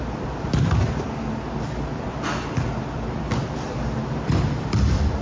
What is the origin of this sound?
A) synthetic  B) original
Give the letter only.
A